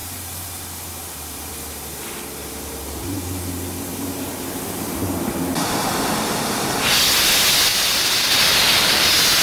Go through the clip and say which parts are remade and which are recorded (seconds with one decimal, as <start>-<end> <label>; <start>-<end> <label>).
0.0-1.5 remade; 1.5-2.4 recorded; 2.4-3.4 remade; 3.4-3.9 recorded; 3.9-5.0 remade; 5.0-7.7 recorded; 7.7-8.3 remade; 8.3-9.4 recorded